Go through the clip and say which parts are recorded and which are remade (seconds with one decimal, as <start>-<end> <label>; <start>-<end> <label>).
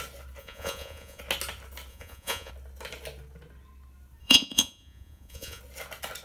0.0-0.4 recorded; 0.4-1.2 remade; 1.2-1.9 recorded; 1.9-2.5 remade; 2.5-4.2 recorded; 4.2-5.6 remade; 5.6-6.2 recorded